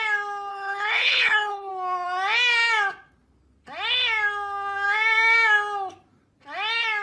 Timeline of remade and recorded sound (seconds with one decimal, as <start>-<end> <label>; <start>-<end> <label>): 0.0-0.5 recorded; 0.5-1.7 remade; 1.7-7.0 recorded